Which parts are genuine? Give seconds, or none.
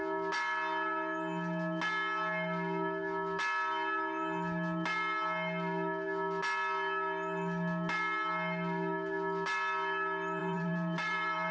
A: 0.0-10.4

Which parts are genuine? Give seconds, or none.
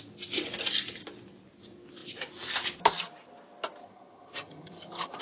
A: 0.0-3.8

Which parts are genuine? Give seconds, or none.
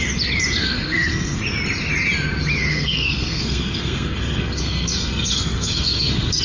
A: 0.0-0.6; 1.4-2.7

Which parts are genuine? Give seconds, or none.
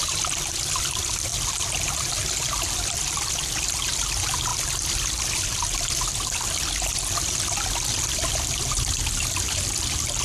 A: 0.0-10.2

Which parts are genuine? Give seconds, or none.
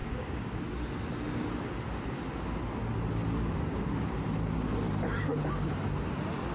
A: 0.6-6.5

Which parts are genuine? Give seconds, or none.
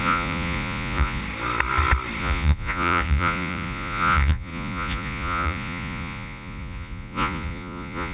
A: 1.2-2.2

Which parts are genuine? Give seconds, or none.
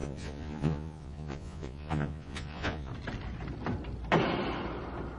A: 2.9-5.2